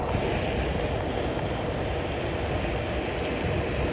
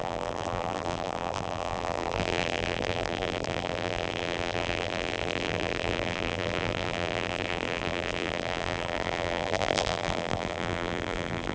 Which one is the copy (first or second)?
second